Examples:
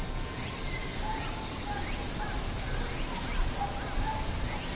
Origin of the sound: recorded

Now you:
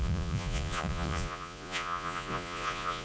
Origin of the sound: remade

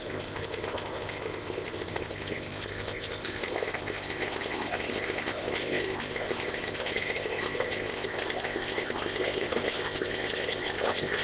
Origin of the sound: remade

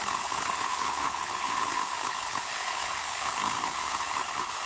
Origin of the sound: remade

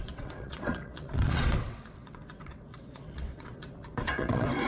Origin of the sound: remade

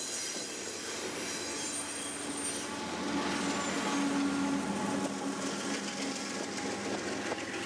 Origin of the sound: recorded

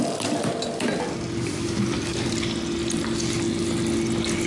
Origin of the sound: recorded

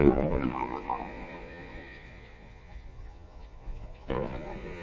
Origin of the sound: remade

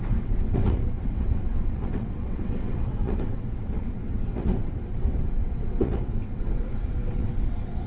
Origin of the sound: remade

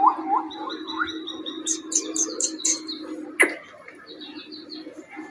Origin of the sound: recorded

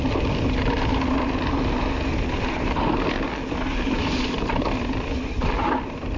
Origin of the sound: recorded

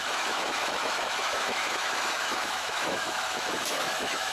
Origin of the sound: remade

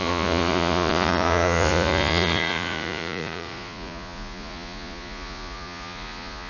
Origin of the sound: remade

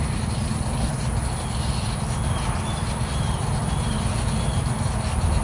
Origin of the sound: recorded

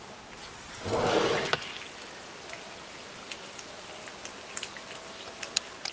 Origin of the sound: recorded